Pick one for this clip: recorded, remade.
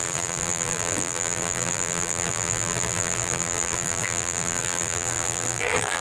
remade